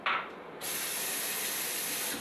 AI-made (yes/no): no